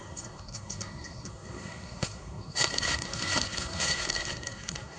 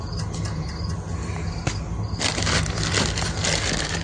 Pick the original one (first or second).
second